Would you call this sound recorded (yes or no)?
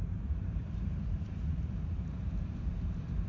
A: no